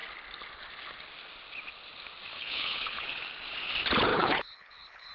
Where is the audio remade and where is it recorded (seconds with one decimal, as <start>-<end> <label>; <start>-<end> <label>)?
0.0-2.3 recorded; 2.3-3.2 remade; 3.2-4.1 recorded; 4.1-5.1 remade